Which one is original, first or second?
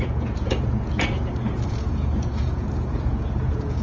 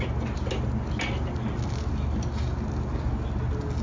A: second